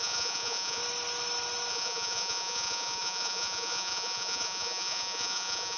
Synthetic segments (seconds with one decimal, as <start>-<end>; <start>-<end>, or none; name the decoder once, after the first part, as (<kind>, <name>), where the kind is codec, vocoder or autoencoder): 0.0-0.8 (vocoder, Vocos); 1.7-5.8